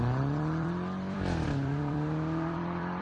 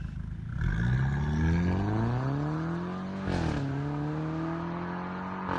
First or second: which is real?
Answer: second